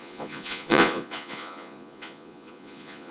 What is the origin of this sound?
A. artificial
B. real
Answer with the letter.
A